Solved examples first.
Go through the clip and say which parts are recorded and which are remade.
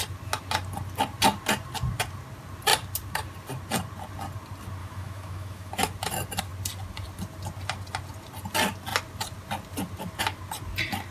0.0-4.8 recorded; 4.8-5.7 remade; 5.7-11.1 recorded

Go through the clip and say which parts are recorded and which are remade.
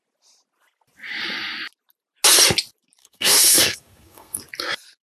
0.0-3.0 recorded; 3.0-4.4 remade; 4.4-5.0 recorded